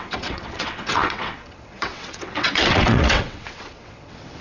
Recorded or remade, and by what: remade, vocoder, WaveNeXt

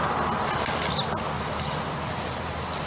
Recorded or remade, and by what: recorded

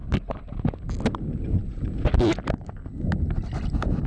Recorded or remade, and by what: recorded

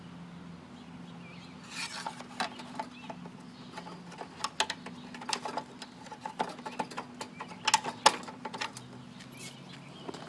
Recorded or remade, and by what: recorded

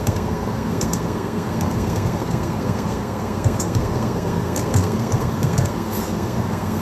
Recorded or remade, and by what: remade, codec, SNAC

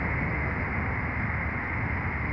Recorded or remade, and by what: recorded